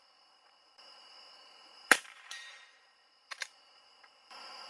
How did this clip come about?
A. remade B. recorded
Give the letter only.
A